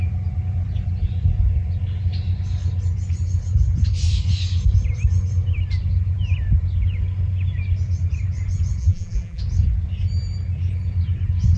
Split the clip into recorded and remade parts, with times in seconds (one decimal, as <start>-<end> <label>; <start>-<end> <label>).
0.0-8.8 recorded; 8.8-9.4 remade; 9.4-11.6 recorded